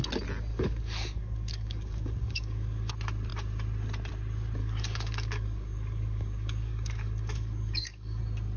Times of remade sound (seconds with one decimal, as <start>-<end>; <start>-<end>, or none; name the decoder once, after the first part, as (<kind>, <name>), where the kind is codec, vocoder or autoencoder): 0.5-2.9 (codec, DAC); 4.6-8.2